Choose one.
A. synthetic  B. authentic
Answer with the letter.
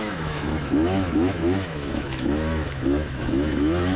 A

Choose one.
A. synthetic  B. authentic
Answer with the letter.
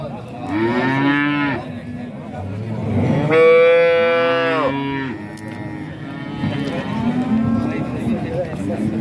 B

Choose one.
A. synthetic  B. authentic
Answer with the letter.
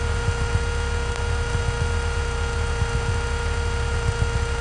B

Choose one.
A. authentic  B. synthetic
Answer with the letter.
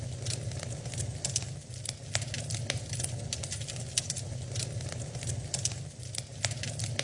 A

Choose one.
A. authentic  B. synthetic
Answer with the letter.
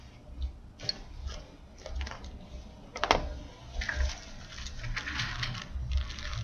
A